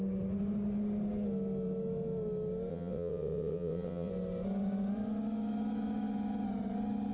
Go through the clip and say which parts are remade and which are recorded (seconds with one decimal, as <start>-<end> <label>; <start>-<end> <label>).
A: 0.0-2.7 recorded; 2.7-4.1 remade; 4.1-7.1 recorded